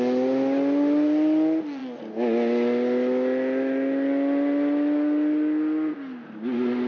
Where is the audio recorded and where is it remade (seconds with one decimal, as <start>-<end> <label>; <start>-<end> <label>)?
0.0-6.9 recorded